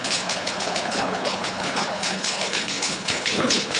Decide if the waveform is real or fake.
fake